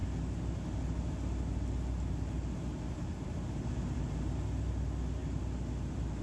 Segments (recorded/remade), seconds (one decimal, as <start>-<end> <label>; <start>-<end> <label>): 0.0-6.2 recorded